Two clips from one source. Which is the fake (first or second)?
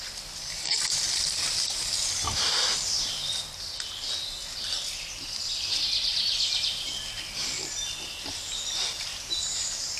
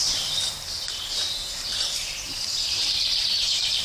second